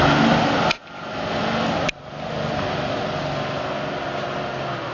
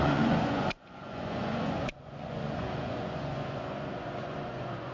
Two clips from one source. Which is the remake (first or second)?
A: second